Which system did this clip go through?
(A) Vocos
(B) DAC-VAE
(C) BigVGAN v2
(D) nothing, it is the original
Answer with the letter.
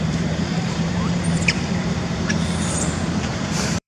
C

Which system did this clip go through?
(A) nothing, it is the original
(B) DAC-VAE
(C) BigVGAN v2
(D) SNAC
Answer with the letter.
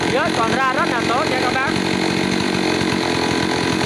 A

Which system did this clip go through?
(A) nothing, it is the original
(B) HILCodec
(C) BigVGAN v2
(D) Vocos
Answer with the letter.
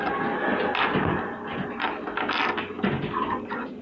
A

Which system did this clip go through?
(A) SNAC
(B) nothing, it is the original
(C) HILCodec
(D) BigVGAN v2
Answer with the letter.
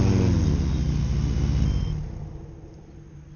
B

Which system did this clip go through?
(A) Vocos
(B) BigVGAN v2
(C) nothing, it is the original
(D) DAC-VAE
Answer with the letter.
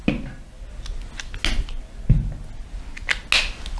C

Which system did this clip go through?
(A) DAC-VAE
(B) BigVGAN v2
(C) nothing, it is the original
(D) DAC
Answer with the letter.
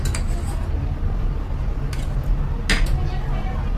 C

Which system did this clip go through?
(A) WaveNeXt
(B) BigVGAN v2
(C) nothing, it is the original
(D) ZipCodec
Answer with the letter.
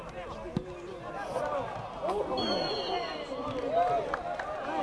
C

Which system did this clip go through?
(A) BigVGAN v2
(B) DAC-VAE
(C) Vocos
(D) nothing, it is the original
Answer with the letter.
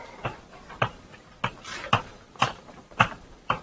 A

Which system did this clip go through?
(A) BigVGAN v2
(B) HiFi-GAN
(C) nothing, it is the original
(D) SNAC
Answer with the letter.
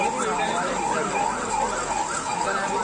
C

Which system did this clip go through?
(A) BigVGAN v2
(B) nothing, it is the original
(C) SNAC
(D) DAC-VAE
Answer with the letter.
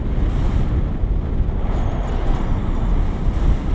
B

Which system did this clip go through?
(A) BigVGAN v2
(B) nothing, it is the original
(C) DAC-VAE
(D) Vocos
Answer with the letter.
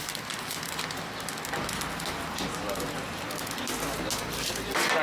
B